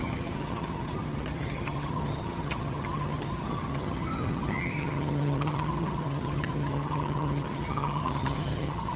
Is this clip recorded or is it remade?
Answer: remade